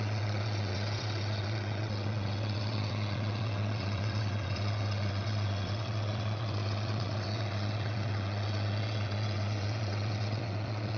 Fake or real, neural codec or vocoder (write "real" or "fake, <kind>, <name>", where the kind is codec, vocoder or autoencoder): fake, vocoder, WaveNeXt